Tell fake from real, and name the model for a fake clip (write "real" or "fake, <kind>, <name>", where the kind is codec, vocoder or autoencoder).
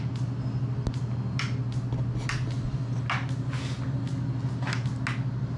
real